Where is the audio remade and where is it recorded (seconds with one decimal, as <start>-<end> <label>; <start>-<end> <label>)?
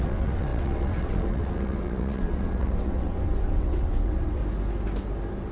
0.0-4.4 remade; 4.4-5.5 recorded